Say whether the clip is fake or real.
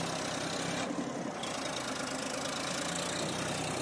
real